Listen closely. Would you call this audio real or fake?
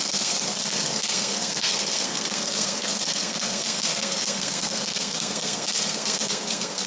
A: fake